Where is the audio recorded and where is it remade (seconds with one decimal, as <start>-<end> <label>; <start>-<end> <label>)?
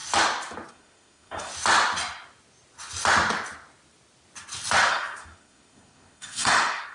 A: 0.0-0.7 recorded; 0.7-1.5 remade; 1.5-4.9 recorded; 4.9-6.9 remade